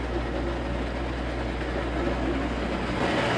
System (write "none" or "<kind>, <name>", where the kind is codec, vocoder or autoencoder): none